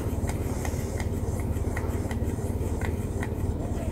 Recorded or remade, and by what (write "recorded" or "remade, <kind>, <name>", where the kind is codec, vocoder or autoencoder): remade, vocoder, BigVGAN v2